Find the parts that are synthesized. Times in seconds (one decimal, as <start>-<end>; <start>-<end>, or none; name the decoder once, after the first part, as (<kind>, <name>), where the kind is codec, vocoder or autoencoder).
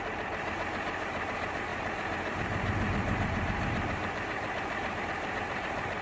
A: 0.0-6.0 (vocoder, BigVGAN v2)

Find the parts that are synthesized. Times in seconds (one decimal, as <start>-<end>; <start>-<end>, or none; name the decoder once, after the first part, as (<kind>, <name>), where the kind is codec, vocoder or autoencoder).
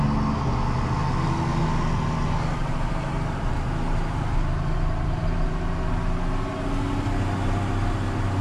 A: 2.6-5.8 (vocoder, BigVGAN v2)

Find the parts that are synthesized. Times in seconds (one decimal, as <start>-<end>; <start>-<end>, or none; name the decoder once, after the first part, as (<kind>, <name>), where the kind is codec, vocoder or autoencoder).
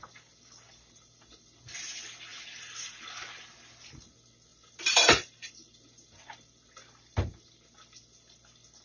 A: 4.5-5.5 (vocoder, BigVGAN v2)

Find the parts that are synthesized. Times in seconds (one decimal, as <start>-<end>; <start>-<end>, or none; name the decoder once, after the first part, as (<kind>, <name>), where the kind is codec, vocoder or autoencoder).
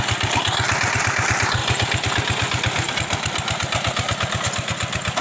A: none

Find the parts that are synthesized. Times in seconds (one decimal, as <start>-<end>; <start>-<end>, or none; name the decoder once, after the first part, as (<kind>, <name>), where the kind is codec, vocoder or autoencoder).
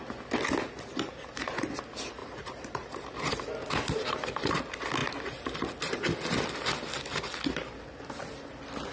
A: 0.9-1.5 (vocoder, BigVGAN v2); 2.2-3.3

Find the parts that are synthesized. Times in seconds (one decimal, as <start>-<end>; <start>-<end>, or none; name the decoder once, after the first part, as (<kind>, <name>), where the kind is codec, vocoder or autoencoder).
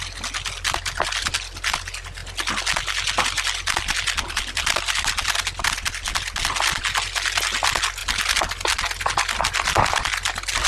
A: none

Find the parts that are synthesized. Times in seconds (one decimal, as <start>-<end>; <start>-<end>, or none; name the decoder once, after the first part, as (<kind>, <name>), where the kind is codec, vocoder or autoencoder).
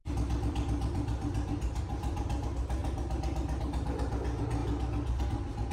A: 0.0-1.8 (vocoder, BigVGAN v2)